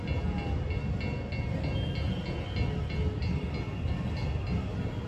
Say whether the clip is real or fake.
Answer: real